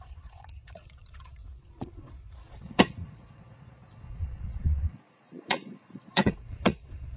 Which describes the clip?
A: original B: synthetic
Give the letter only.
B